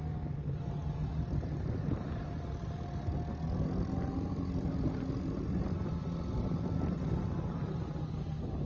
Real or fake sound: real